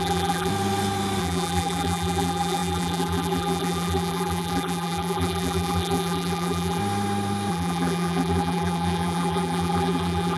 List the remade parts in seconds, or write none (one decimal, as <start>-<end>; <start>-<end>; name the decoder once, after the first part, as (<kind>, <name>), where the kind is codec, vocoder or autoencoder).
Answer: 0.0-0.5 (vocoder, BigVGAN v2); 1.2-6.8; 7.5-10.4